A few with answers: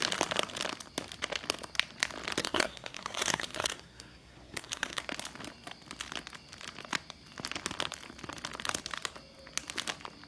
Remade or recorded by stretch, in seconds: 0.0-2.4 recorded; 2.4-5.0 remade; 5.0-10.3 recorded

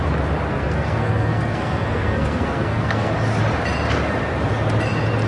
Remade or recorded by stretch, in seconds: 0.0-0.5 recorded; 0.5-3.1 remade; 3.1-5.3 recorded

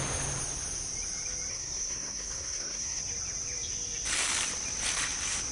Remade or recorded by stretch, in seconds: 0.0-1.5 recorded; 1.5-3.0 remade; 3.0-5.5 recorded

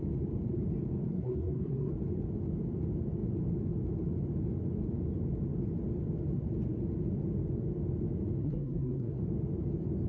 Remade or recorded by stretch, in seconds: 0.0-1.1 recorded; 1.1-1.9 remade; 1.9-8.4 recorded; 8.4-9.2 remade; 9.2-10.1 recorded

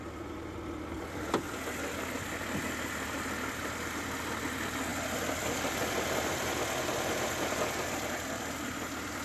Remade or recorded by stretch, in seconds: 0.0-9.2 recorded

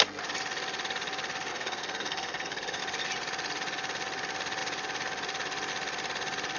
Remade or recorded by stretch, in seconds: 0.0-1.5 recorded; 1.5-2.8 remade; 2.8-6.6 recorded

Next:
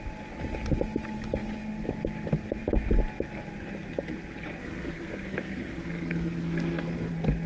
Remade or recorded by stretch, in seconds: 0.0-4.6 recorded; 4.6-7.1 remade; 7.1-7.5 recorded